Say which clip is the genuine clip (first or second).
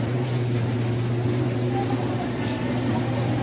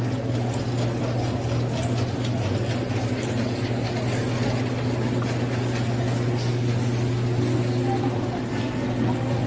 second